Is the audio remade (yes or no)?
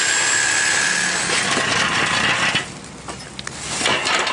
no